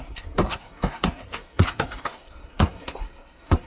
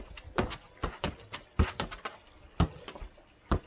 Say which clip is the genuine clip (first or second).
second